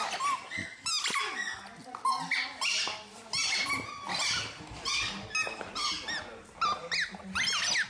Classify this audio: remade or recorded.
recorded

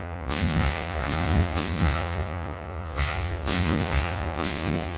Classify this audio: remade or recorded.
remade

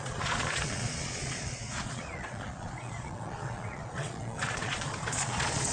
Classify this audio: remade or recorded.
remade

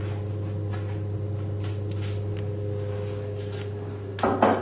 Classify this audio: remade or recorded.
recorded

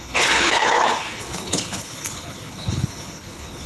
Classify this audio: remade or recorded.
remade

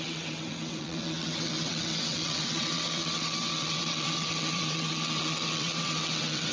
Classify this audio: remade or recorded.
remade